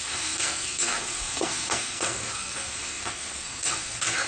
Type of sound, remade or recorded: remade